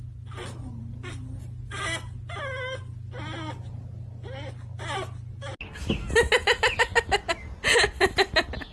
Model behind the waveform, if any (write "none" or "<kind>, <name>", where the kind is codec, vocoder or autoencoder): none